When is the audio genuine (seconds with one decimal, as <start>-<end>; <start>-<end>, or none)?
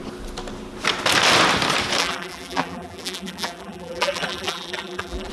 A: 0.0-2.0